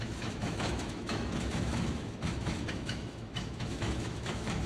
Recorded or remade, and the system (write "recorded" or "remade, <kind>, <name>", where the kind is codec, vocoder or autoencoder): remade, autoencoder, DAC-VAE